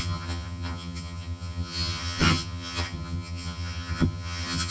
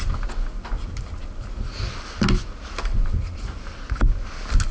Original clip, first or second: second